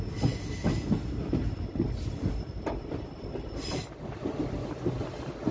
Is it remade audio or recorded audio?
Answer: recorded